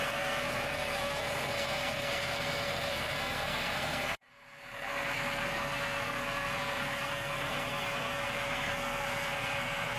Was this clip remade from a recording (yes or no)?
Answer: yes